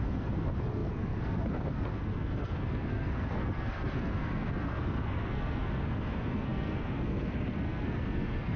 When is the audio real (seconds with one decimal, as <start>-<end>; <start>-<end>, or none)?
none